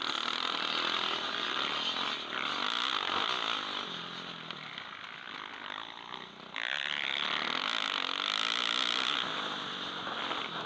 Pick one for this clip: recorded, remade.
recorded